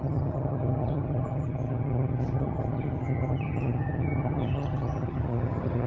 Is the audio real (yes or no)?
no